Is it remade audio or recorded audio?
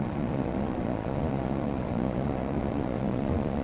remade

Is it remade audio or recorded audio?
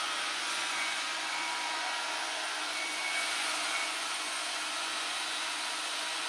remade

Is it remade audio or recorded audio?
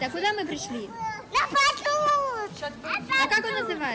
recorded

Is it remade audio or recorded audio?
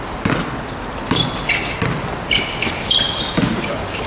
recorded